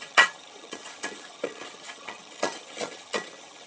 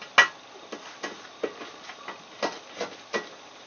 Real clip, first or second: second